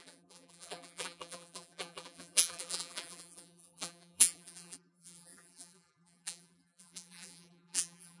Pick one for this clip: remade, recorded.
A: remade